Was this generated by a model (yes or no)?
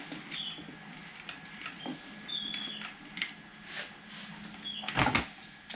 no